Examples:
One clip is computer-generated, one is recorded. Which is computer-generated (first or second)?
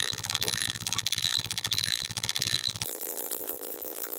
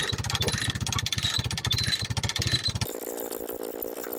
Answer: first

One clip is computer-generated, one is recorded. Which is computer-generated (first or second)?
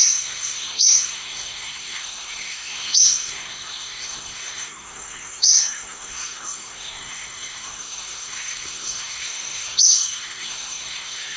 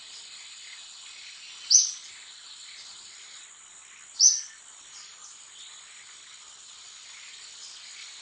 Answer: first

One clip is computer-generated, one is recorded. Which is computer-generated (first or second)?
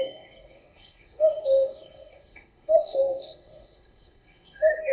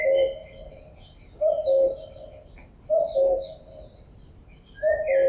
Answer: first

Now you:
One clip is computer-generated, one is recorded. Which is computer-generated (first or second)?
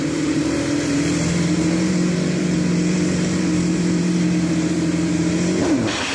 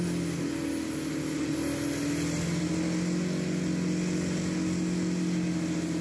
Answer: first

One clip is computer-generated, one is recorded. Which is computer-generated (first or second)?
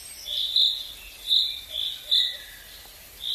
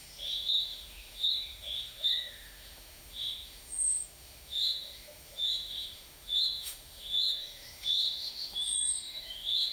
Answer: second